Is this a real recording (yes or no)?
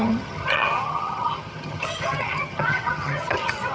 no